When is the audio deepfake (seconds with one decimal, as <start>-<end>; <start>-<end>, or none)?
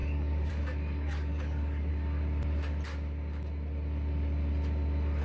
0.0-1.9